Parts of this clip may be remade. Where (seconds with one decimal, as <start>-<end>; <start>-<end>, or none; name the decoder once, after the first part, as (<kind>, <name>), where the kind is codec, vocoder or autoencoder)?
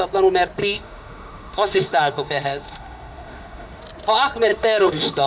0.6-3.8 (autoencoder, DAC-VAE); 4.5-5.3